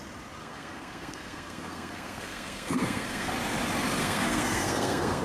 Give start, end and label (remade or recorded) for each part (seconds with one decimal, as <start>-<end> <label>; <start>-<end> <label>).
0.0-0.4 recorded; 0.4-3.3 remade; 3.3-4.0 recorded; 4.0-5.2 remade